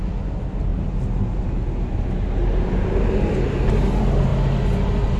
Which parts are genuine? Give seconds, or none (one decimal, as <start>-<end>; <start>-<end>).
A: 0.0-5.2